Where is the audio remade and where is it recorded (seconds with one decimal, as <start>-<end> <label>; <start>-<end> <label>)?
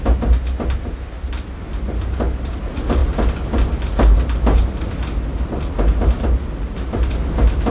0.0-7.7 recorded